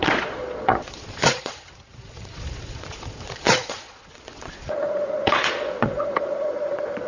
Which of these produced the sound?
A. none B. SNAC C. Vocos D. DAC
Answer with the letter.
C